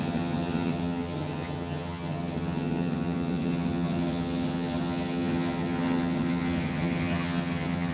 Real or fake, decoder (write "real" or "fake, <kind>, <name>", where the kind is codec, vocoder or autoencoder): fake, vocoder, HiFi-GAN